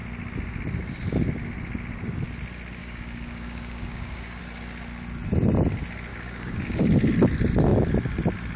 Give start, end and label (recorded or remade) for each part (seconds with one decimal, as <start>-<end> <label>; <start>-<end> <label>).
0.0-2.8 recorded; 2.8-4.4 remade; 4.4-6.1 recorded; 6.1-6.6 remade; 6.6-8.6 recorded